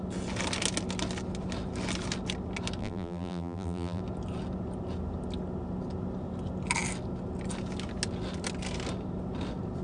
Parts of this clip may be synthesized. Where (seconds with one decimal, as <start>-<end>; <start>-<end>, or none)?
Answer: 2.8-4.0